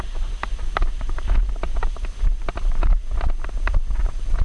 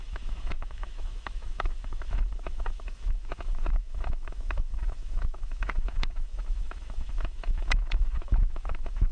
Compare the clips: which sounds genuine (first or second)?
first